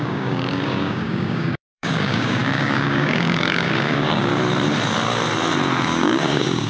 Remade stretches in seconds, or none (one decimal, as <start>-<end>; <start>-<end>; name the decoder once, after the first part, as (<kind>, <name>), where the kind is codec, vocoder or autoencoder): 0.0-4.3 (codec, DAC); 5.8-6.7